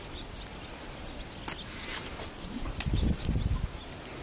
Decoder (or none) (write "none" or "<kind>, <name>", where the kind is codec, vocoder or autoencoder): none